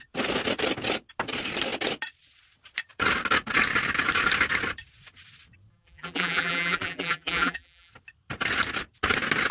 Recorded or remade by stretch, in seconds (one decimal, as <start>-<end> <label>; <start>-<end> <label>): 0.0-5.7 recorded; 5.7-7.9 remade; 7.9-9.5 recorded